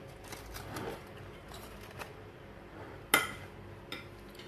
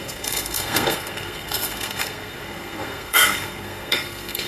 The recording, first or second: first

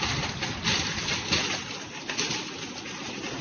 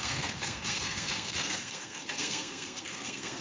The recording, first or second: first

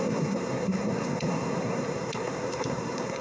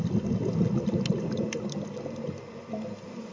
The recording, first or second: second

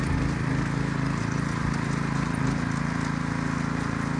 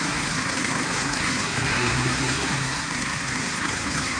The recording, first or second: first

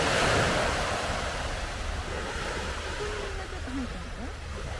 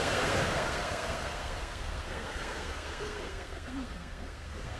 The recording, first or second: first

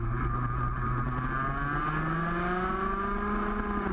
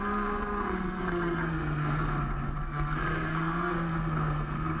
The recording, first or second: first